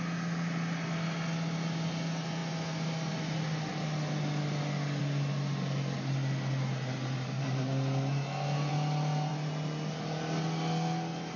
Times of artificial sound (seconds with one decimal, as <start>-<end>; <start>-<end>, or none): none